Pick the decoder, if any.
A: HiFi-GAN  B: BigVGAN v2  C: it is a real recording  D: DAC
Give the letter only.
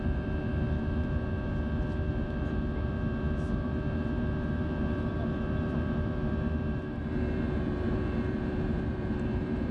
B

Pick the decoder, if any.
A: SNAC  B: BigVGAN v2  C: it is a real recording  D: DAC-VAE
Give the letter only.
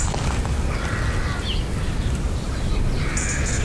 C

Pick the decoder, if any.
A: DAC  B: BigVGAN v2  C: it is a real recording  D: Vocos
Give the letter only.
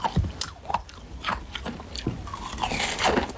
C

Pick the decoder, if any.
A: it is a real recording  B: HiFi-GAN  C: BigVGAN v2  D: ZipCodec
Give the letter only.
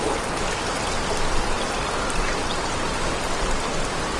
A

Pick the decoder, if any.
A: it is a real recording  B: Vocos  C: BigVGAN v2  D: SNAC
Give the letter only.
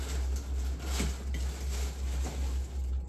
A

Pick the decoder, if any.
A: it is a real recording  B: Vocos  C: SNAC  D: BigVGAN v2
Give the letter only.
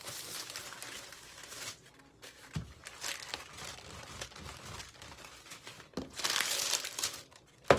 A